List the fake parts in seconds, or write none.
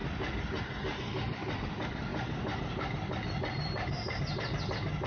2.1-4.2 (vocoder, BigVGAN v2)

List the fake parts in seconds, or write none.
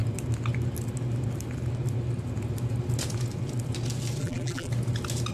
4.2-4.7 (vocoder, BigVGAN v2)